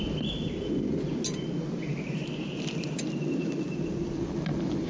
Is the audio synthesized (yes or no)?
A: no